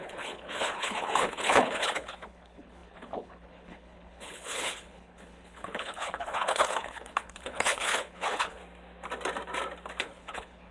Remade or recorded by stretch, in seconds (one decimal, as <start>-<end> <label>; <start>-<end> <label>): 0.0-8.6 remade; 8.6-10.0 recorded; 10.0-10.7 remade